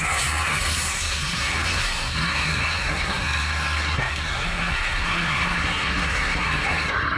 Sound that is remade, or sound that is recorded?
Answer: remade